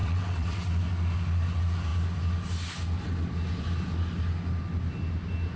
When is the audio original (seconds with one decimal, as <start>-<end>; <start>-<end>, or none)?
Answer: 0.7-5.6